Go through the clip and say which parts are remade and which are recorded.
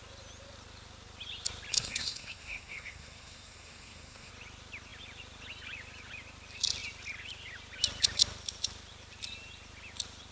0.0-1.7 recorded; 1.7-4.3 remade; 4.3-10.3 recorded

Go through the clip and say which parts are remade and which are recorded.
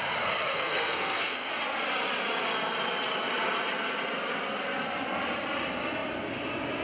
0.0-0.5 recorded; 0.5-1.5 remade; 1.5-6.8 recorded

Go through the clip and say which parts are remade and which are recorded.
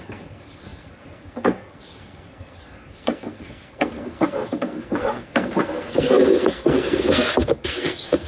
0.0-8.3 remade